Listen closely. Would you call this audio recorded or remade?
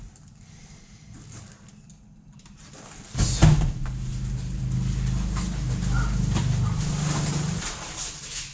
recorded